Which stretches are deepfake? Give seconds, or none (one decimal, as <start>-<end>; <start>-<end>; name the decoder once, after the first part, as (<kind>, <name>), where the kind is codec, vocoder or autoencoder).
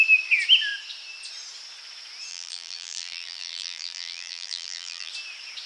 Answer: 2.3-5.1 (vocoder, BigVGAN v2)